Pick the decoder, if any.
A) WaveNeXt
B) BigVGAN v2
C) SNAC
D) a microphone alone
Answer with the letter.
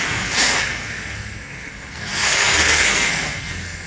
C